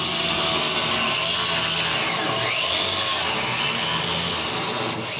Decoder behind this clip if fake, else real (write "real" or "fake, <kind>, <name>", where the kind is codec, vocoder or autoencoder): real